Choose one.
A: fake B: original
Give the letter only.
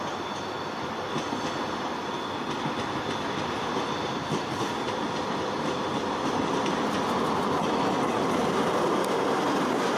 B